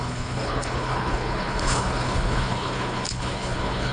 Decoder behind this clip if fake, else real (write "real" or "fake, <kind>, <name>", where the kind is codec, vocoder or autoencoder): fake, codec, HILCodec